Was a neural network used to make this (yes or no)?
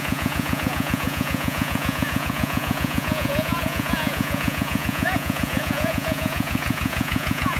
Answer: yes